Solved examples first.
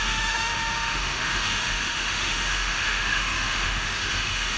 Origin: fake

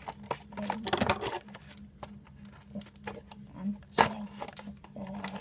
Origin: real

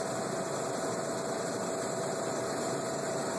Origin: real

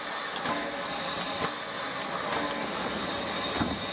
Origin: real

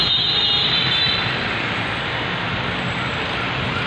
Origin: real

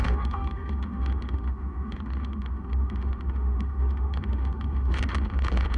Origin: fake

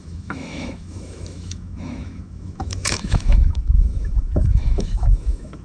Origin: fake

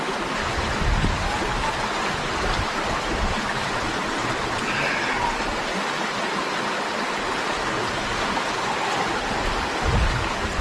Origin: real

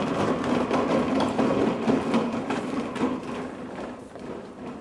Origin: real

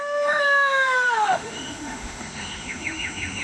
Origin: fake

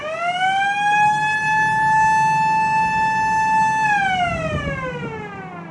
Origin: real